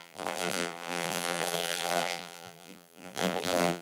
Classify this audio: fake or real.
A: fake